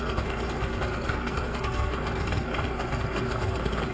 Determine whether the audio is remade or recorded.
remade